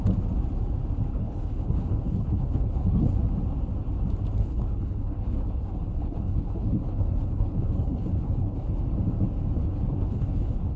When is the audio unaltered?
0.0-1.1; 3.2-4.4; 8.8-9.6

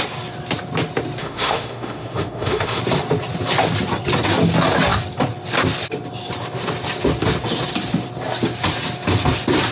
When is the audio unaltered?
0.0-1.2; 2.8-9.7

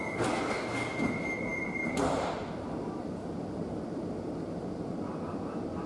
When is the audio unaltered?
0.0-1.5; 5.0-5.9

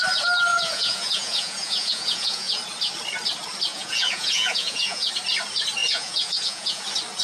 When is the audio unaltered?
0.0-0.5; 2.6-3.7; 5.1-5.8; 6.8-7.2

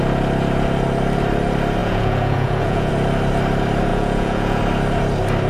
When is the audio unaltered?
0.0-1.8; 2.9-3.9; 4.6-5.5

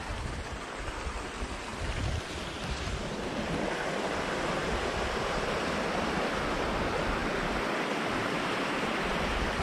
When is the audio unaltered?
0.0-9.6

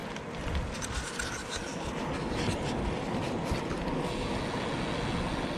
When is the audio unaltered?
0.0-5.6

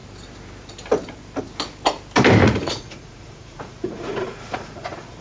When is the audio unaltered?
0.0-2.4